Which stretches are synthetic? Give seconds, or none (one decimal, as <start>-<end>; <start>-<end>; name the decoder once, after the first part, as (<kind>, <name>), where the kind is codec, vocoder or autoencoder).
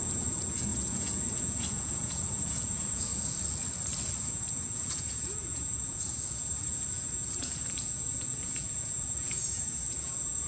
0.0-3.1 (vocoder, Vocos); 4.2-10.5